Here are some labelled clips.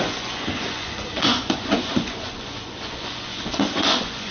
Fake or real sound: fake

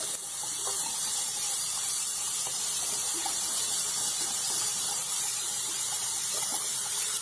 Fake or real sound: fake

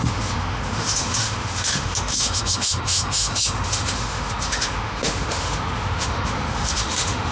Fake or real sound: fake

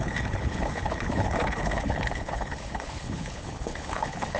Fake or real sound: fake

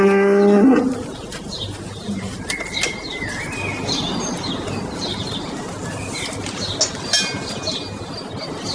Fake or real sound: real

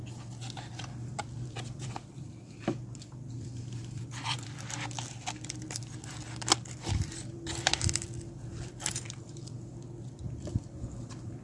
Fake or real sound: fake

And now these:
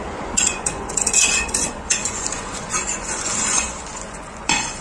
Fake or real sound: fake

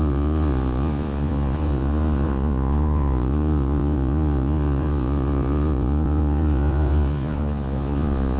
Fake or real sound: fake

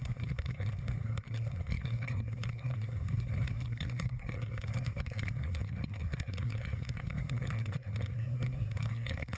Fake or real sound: fake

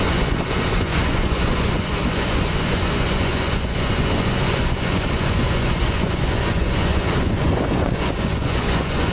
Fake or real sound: fake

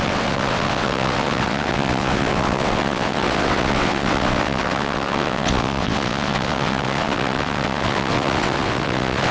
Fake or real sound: fake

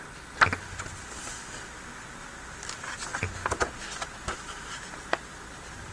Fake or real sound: real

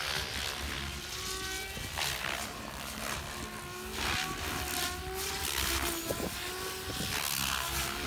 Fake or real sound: real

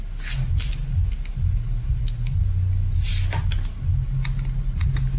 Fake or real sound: real